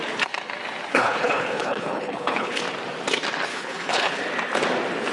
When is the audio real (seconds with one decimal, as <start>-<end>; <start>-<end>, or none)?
0.0-0.9; 2.6-3.5; 4.2-5.1